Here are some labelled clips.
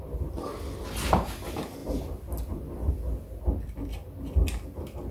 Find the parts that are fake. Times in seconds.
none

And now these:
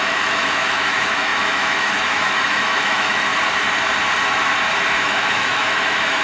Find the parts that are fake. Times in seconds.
0.0-3.3 (autoencoder, DAC-VAE); 4.9-6.2